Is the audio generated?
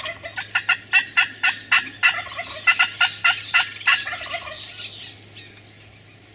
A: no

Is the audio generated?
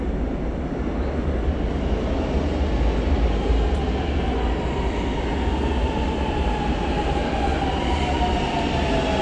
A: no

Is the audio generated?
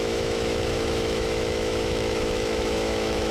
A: yes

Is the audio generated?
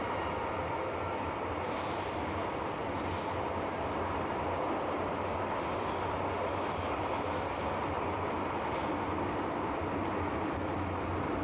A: no